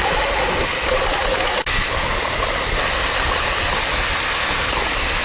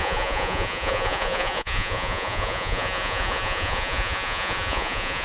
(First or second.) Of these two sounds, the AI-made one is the second